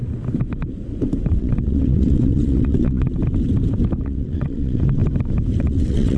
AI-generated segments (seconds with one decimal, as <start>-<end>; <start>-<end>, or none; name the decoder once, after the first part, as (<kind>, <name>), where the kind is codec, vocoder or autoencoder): 1.3-3.1 (vocoder, WaveNeXt); 4.0-5.0; 5.6-6.2